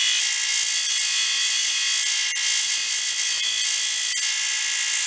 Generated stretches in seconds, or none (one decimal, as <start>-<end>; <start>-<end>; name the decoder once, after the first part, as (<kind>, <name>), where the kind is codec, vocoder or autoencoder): none